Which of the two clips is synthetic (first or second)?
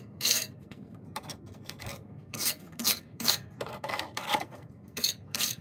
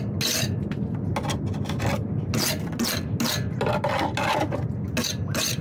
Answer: first